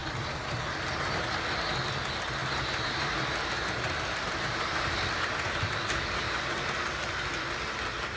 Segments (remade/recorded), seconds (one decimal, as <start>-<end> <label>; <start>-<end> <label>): 0.0-1.3 remade; 1.3-2.4 recorded; 2.4-5.1 remade; 5.1-8.2 recorded